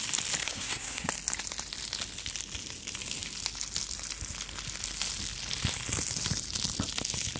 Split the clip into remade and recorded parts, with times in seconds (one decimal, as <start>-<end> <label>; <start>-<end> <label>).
0.0-0.4 recorded; 0.4-1.1 remade; 1.1-7.4 recorded